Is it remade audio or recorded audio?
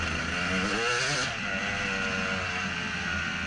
recorded